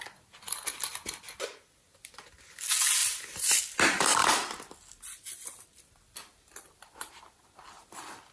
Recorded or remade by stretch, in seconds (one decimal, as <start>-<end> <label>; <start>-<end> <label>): 0.0-3.0 recorded; 3.0-3.6 remade; 3.6-4.2 recorded; 4.2-7.1 remade; 7.1-8.3 recorded

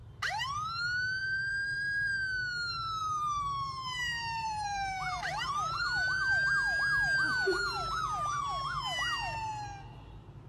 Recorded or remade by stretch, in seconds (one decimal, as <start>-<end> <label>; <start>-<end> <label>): 0.0-0.7 remade; 0.7-1.2 recorded; 1.2-2.1 remade; 2.1-3.0 recorded; 3.0-6.5 remade; 6.5-10.5 recorded

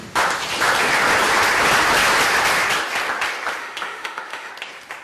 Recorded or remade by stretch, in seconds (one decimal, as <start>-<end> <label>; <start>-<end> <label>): 0.0-3.6 recorded; 3.6-4.5 remade; 4.5-5.0 recorded